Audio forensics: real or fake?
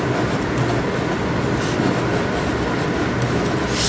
real